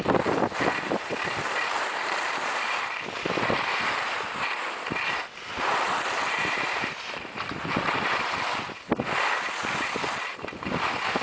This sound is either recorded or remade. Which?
recorded